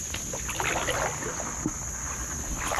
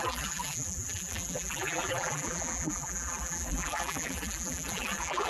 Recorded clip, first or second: first